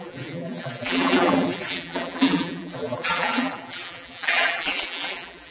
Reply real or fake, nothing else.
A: fake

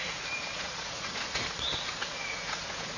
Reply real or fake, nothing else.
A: fake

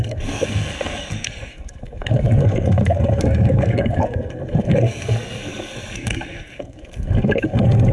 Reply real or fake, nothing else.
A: fake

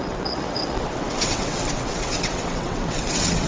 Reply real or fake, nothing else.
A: fake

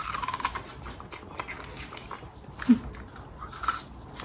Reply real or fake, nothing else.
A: real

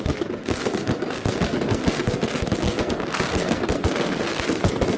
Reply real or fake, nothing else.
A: fake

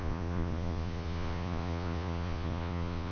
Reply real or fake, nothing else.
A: fake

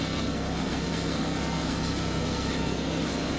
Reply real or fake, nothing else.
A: fake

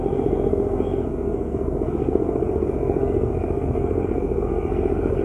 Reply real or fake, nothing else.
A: fake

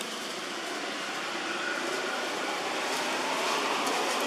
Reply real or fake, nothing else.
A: real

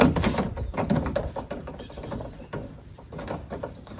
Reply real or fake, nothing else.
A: real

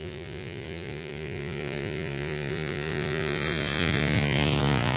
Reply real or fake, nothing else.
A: fake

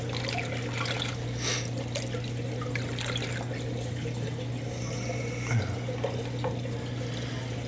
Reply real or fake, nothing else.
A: real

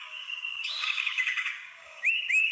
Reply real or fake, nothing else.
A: fake